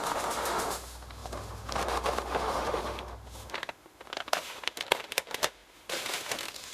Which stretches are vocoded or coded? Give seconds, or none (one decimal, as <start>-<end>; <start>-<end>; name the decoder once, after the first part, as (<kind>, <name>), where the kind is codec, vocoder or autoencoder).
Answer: 0.0-6.7 (autoencoder, DAC-VAE)